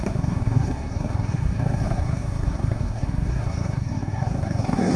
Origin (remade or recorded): remade